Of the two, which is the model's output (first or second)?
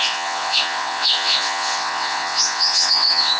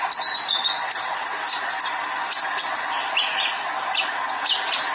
first